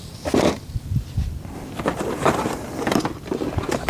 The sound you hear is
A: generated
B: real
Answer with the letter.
A